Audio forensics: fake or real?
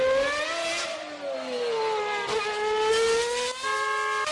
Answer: real